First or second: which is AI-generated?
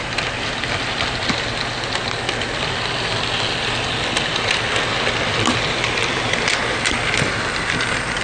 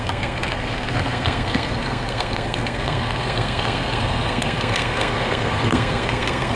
second